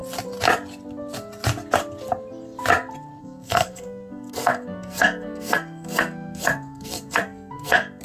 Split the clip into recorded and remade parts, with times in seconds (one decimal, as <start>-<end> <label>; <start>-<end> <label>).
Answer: 0.0-3.2 recorded; 3.2-8.0 remade